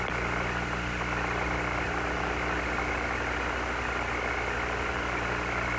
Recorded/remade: recorded